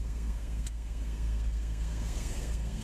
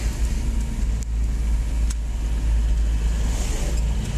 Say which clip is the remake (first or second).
first